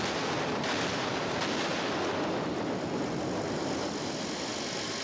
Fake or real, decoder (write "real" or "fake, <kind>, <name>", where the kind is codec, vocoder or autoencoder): real